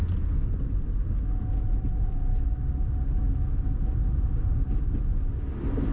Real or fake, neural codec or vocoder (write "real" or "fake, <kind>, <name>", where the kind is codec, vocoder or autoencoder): real